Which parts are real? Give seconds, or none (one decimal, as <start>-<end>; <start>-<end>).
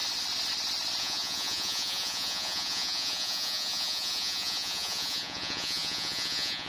0.0-1.0